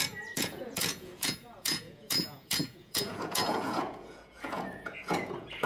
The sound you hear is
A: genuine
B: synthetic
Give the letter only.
B